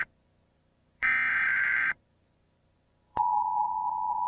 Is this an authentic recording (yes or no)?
no